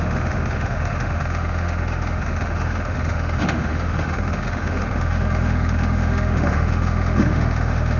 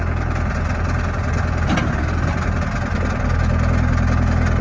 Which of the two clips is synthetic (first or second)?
first